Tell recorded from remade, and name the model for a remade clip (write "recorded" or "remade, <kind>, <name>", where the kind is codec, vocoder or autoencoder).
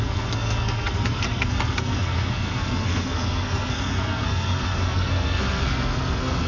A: remade, codec, SNAC